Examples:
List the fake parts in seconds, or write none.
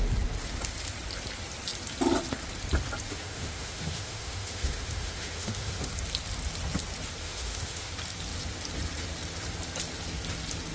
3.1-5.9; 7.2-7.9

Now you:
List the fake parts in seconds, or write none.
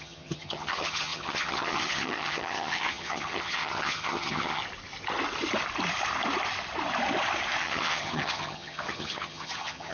0.0-4.6; 7.6-9.9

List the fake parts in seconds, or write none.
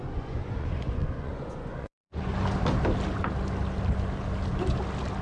0.0-2.3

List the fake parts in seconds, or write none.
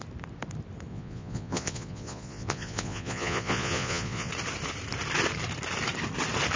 0.9-4.3